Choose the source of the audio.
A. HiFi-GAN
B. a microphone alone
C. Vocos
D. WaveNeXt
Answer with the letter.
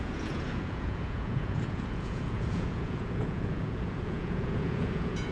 C